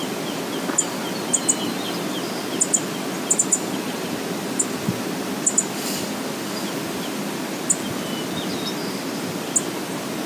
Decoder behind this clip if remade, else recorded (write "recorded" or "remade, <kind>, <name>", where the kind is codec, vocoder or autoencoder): recorded